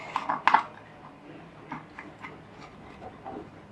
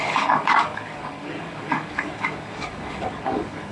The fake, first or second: second